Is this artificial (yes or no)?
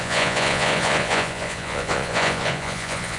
yes